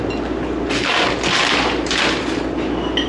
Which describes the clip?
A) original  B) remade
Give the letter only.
A